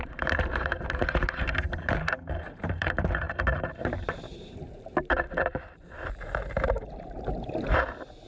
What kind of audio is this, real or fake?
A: fake